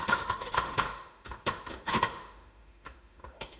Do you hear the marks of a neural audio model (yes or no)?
yes